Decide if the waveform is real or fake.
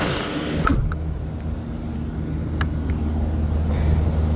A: real